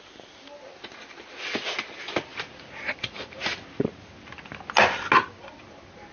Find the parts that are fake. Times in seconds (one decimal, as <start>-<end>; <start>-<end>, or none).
none